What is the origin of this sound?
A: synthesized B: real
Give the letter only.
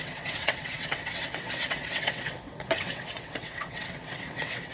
A